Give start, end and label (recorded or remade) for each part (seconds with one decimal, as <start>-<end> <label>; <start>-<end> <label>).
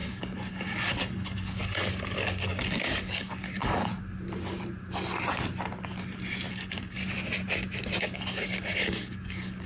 0.0-3.9 remade; 3.9-6.5 recorded; 6.5-7.0 remade; 7.0-8.0 recorded; 8.0-9.7 remade